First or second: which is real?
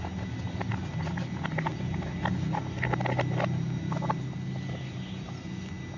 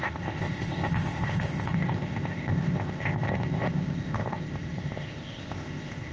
first